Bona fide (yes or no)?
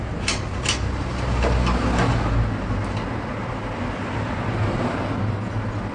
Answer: yes